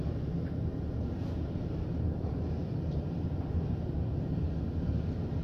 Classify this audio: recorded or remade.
recorded